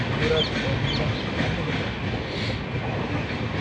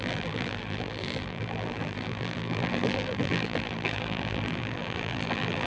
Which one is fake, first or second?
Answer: second